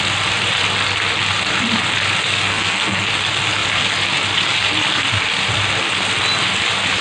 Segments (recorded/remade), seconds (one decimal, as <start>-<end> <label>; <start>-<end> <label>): 0.0-2.5 recorded; 2.5-3.1 remade; 3.1-7.0 recorded

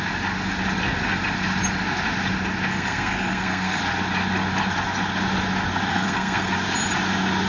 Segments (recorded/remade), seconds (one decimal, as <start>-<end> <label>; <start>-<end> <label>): 0.0-2.7 recorded; 2.7-3.8 remade; 3.8-5.9 recorded; 5.9-6.5 remade; 6.5-7.5 recorded

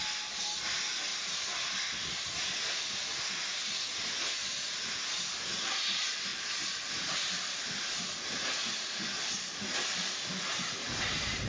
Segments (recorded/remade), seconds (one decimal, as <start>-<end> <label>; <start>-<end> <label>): 0.0-11.5 recorded